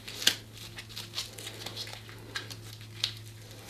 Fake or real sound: real